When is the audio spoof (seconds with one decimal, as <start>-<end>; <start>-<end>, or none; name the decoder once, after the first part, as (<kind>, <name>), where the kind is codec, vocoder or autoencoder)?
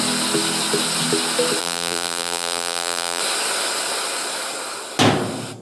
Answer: 1.6-3.2 (vocoder, BigVGAN v2)